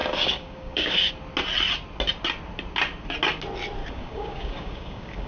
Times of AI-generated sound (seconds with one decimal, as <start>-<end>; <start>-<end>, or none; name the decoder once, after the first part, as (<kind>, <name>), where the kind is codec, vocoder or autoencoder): 0.0-1.1 (codec, DAC); 3.8-5.3